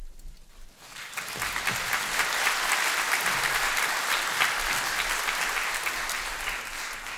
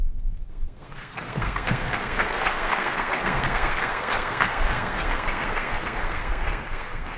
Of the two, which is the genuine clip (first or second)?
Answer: first